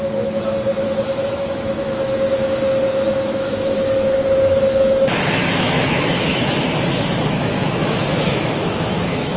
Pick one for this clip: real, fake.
fake